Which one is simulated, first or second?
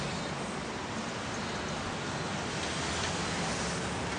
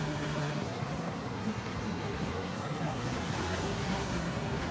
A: second